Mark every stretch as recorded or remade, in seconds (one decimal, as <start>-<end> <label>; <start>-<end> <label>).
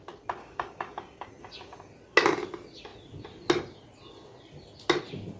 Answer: 0.0-0.4 recorded; 0.4-1.3 remade; 1.3-5.4 recorded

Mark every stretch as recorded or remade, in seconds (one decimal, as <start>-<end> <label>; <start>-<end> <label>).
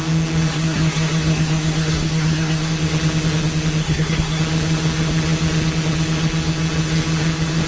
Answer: 0.0-0.5 recorded; 0.5-2.7 remade; 2.7-3.8 recorded; 3.8-4.4 remade; 4.4-7.7 recorded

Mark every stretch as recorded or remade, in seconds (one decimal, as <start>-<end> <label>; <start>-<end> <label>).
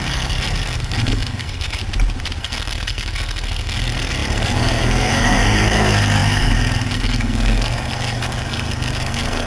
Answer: 0.0-1.8 remade; 1.8-2.4 recorded; 2.4-9.5 remade